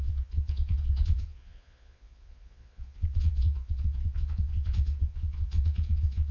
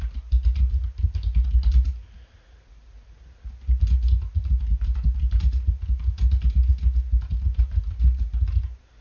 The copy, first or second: first